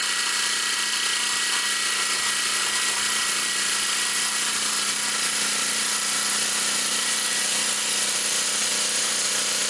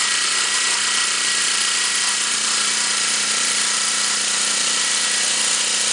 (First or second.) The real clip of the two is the first